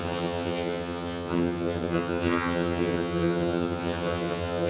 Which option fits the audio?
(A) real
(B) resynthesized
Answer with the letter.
B